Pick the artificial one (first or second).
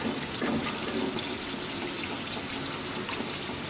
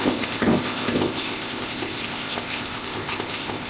second